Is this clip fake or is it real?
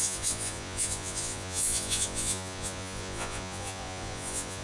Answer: fake